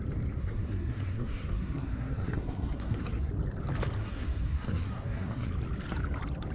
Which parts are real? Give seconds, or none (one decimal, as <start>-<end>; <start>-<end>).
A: 0.0-0.4; 3.3-4.0; 5.5-6.5